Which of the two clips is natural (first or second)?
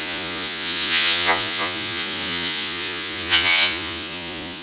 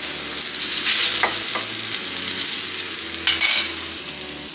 second